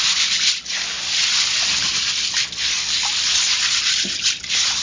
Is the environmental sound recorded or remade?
recorded